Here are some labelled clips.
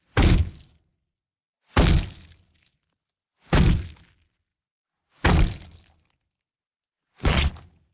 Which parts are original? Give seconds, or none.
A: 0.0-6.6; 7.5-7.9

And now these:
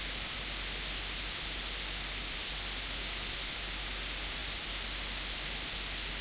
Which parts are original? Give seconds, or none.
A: 0.0-6.2

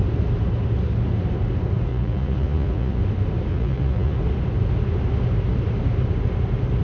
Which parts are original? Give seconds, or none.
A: 0.0-1.9; 3.0-3.5; 4.2-6.8

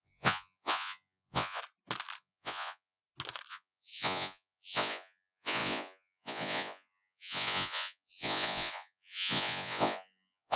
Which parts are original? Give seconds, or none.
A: 1.6-2.2; 3.0-3.5

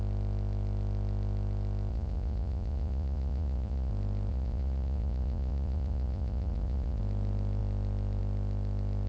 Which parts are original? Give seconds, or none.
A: 0.0-1.9; 3.9-4.3; 7.0-9.1

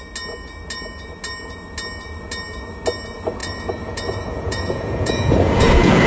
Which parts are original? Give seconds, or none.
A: 0.0-3.4